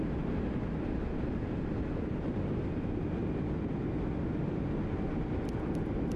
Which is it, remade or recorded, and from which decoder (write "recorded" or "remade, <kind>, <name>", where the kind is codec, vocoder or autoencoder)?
recorded